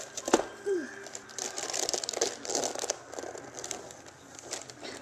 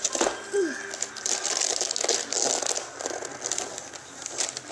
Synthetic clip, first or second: first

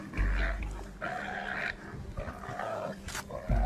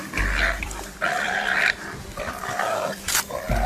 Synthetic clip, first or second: second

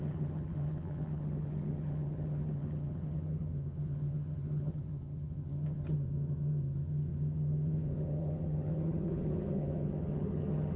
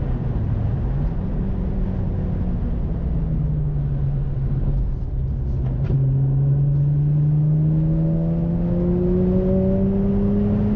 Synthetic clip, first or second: first